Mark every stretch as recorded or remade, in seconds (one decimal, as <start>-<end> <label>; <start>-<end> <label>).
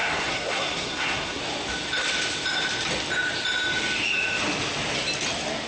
0.0-1.4 remade; 1.4-5.7 recorded